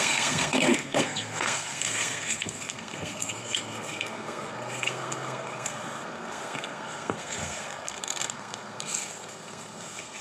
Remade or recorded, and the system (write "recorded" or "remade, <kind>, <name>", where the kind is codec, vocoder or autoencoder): remade, codec, SNAC